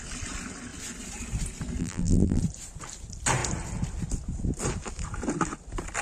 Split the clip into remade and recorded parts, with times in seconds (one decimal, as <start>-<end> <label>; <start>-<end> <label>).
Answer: 0.0-1.8 recorded; 1.8-2.4 remade; 2.4-6.0 recorded